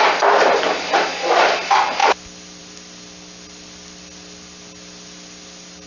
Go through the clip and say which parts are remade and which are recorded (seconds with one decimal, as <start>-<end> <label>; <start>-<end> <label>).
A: 0.0-5.9 recorded